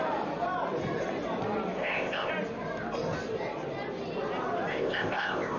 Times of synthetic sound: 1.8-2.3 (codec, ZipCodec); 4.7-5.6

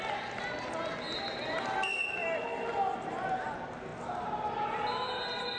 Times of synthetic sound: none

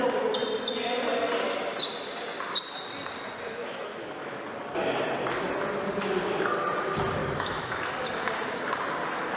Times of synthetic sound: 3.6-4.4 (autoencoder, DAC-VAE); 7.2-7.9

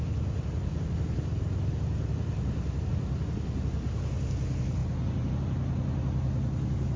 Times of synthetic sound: none